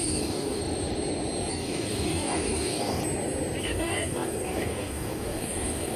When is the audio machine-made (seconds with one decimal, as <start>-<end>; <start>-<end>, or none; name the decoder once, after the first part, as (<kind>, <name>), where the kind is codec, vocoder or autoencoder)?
0.0-0.6 (codec, DAC); 1.5-3.0; 3.6-6.0